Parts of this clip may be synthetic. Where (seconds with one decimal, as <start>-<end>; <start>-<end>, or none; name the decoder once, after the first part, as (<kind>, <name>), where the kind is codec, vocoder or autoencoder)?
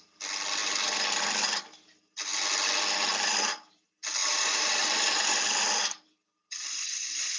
0.6-1.2 (vocoder, BigVGAN v2); 4.2-5.4